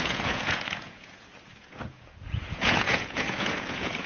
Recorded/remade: remade